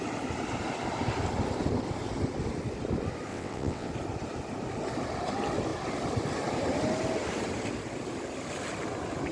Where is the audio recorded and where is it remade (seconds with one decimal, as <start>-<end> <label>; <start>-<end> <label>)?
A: 0.0-3.3 recorded; 3.3-3.9 remade; 3.9-9.3 recorded